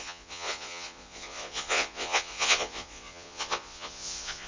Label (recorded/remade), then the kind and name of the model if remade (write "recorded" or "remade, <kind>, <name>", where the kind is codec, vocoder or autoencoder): remade, vocoder, Vocos